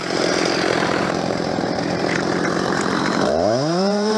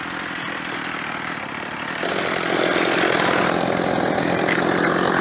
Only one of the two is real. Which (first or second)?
second